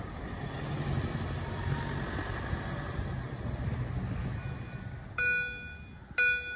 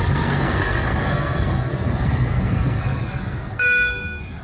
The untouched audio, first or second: first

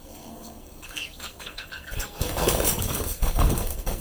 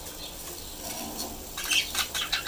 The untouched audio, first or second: second